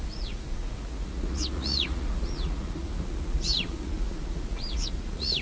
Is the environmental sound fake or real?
fake